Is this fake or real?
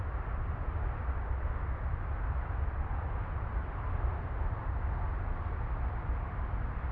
real